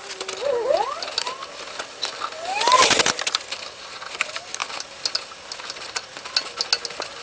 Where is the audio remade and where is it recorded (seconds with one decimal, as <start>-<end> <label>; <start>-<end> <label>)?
0.0-7.2 recorded